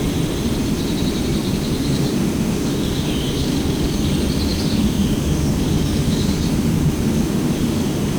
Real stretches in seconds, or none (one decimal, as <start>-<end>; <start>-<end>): 0.0-1.4; 4.1-4.5